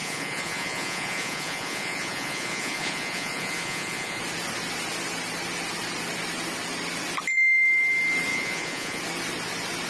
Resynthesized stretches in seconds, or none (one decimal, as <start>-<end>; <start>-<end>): 0.0-4.2; 8.3-9.0